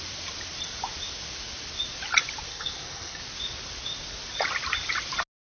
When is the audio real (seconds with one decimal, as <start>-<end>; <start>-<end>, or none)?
0.0-2.5; 3.2-5.6